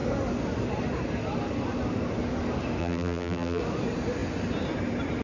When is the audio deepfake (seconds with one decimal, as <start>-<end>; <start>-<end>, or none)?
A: 2.8-3.6